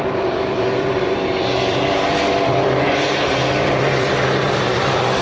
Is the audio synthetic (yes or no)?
yes